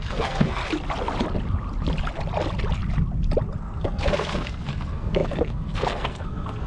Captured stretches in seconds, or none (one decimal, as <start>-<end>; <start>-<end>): 0.6-3.6